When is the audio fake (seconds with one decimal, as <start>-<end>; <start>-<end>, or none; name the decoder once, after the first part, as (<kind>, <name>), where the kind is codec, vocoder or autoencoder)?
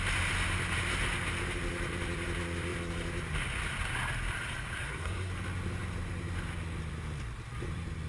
4.8-5.3 (codec, SNAC)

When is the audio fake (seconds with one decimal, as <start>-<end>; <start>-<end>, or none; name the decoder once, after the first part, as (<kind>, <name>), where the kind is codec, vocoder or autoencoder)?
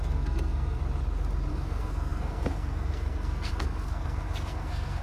0.0-0.8 (codec, SNAC); 1.5-5.0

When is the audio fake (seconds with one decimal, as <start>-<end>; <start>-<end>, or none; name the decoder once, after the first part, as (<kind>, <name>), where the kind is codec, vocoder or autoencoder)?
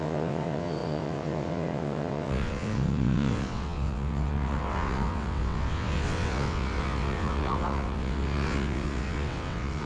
0.0-9.9 (vocoder, WaveNeXt)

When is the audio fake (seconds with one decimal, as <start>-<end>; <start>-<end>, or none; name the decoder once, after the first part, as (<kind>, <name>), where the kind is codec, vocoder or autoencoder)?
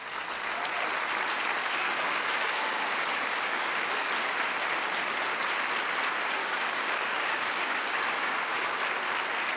1.6-4.1 (codec, DAC); 6.4-8.8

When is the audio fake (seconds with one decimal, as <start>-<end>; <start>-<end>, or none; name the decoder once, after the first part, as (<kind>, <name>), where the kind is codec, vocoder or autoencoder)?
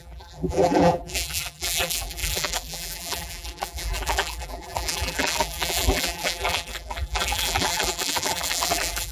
0.0-9.1 (vocoder, BigVGAN v2)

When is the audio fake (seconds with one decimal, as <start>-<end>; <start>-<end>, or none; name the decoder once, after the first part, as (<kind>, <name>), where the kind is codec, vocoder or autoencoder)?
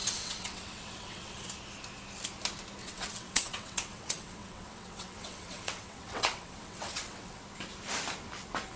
0.0-1.5 (vocoder, WaveNeXt); 2.8-7.4